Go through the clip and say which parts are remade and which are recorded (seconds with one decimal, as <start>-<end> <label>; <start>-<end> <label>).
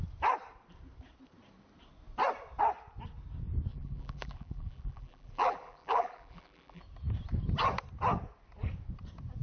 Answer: 0.0-3.7 recorded; 3.7-6.8 remade; 6.8-9.4 recorded